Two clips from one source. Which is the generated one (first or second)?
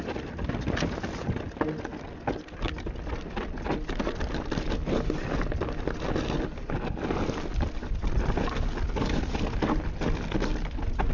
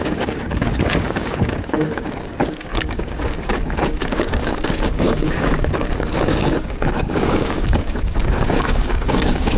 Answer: second